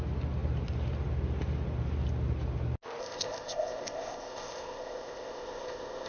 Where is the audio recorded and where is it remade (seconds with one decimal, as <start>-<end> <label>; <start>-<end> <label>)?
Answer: 0.0-3.0 recorded; 3.0-6.1 remade